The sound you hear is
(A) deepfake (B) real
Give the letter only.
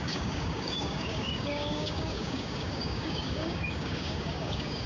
A